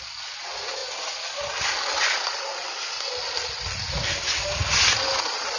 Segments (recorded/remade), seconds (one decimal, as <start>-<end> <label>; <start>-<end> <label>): 0.0-5.6 recorded